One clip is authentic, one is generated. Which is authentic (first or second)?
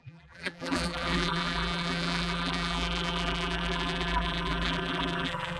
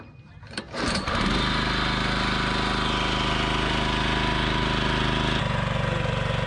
second